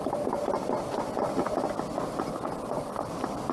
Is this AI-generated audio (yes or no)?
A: no